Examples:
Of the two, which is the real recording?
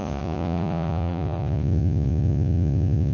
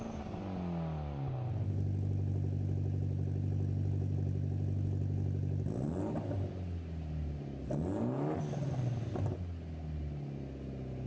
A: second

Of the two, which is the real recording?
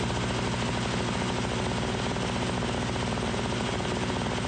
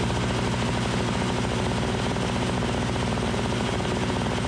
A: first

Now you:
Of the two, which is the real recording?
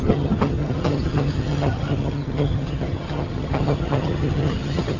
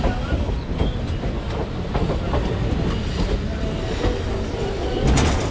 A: second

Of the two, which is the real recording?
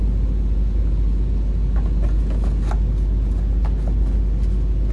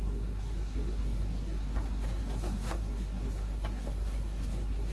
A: first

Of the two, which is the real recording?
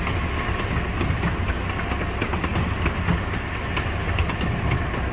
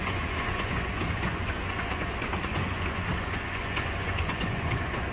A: first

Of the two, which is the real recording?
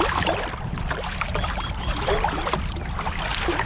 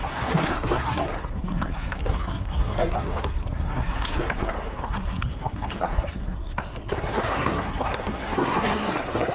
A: first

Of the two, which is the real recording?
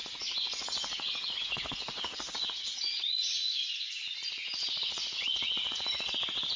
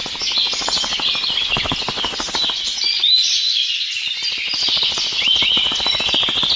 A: second